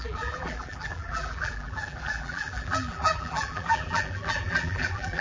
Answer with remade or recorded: remade